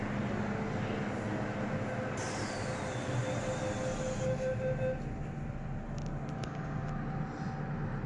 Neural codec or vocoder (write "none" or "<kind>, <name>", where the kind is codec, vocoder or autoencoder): none